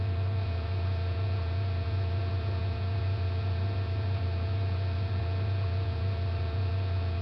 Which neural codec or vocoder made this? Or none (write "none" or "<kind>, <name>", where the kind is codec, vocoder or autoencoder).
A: vocoder, Vocos